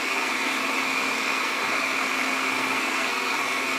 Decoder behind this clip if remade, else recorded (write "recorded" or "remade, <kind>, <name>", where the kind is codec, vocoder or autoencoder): remade, codec, SNAC